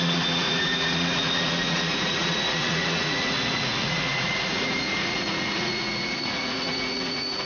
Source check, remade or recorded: remade